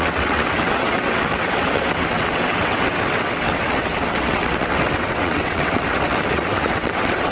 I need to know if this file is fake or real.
fake